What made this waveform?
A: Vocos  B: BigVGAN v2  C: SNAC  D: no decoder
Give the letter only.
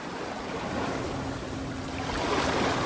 D